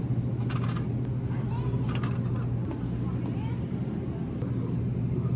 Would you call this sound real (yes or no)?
yes